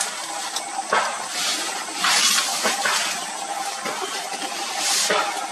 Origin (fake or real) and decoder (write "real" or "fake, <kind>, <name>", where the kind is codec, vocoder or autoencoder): real